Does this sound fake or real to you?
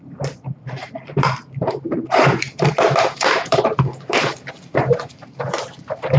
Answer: fake